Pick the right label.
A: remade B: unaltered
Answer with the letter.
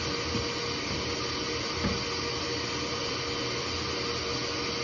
B